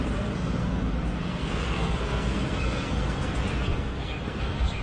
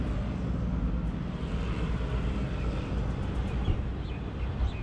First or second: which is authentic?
second